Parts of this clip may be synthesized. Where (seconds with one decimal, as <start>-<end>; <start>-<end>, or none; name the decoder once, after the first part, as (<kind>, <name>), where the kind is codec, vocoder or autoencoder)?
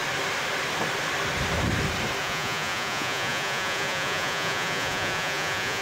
2.2-5.8 (vocoder, Vocos)